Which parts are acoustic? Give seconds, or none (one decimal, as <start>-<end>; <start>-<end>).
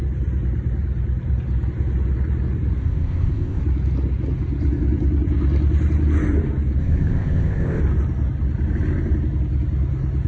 0.0-2.8; 3.6-6.8; 7.8-10.3